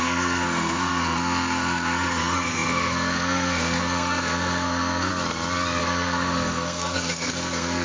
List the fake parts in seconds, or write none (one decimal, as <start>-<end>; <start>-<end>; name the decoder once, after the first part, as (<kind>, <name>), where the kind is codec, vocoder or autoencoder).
0.0-5.1 (codec, SNAC); 5.8-7.8